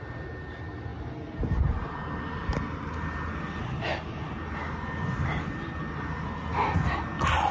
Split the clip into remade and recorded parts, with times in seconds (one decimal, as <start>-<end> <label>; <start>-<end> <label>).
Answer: 0.0-0.9 recorded; 0.9-2.0 remade; 2.0-7.5 recorded